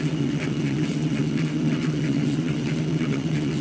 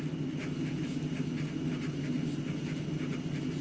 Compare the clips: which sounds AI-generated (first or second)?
first